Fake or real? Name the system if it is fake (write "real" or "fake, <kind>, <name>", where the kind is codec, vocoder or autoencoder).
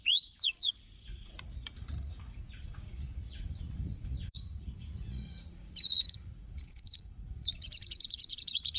fake, vocoder, Vocos